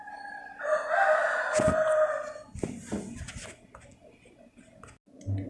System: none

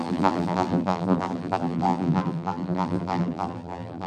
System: vocoder, BigVGAN v2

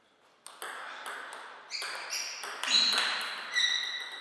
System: none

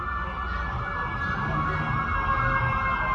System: none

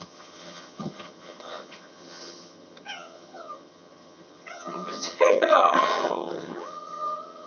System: vocoder, HiFi-GAN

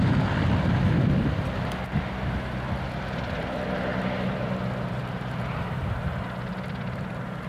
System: none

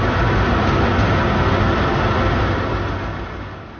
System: none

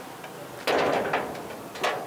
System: none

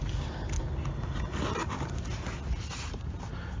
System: none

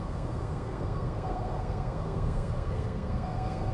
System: codec, SNAC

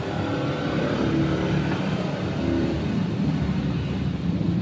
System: vocoder, BigVGAN v2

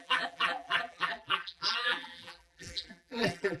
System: vocoder, BigVGAN v2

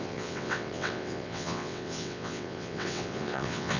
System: vocoder, WaveNeXt